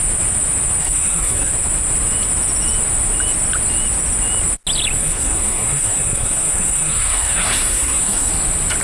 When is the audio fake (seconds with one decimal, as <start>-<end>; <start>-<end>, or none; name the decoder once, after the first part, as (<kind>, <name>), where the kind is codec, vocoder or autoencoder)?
0.8-1.5 (codec, SNAC); 5.0-8.3